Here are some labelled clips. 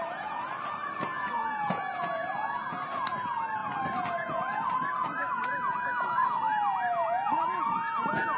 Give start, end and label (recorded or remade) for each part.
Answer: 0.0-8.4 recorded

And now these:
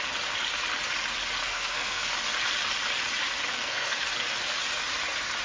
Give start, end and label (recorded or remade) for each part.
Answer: 0.0-1.4 recorded; 1.4-2.1 remade; 2.1-3.5 recorded; 3.5-4.1 remade; 4.1-5.4 recorded